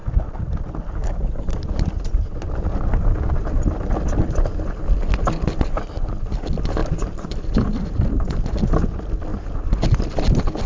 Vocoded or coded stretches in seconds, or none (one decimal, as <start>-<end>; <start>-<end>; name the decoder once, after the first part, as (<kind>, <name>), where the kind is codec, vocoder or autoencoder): 6.8-8.0 (vocoder, BigVGAN v2)